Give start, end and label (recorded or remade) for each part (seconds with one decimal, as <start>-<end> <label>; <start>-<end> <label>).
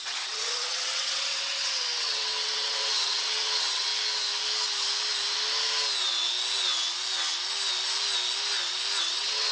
0.0-3.9 remade; 3.9-9.0 recorded; 9.0-9.5 remade